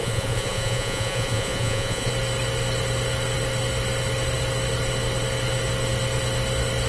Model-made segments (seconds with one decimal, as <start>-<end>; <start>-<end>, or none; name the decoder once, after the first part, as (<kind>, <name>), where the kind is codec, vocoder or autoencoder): 0.0-2.1 (vocoder, Vocos)